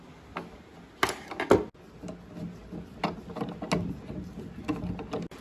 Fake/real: real